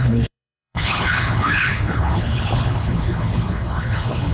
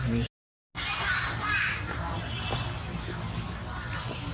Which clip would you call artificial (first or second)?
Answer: first